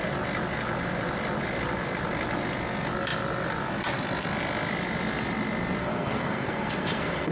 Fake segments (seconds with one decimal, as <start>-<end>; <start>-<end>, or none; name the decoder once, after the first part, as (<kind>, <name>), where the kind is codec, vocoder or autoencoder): 5.8-7.3 (codec, SNAC)